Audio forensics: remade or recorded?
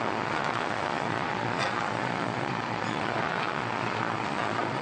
remade